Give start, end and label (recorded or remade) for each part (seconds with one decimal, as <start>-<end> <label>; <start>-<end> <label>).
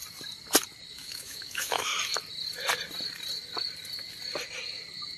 0.0-0.9 recorded; 0.9-1.9 remade; 1.9-5.2 recorded